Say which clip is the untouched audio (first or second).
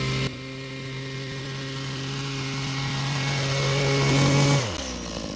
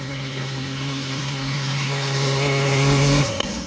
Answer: first